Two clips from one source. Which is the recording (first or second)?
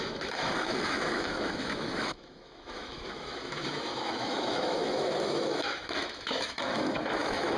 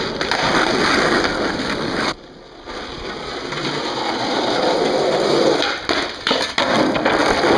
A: second